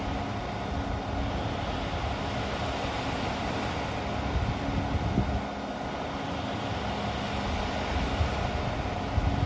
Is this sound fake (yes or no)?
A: no